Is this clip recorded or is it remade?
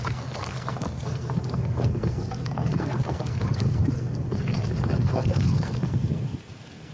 remade